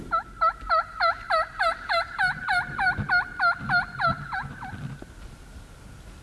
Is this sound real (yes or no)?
yes